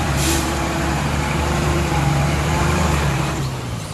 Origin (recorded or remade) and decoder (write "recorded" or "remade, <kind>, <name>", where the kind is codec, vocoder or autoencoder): remade, vocoder, BigVGAN v2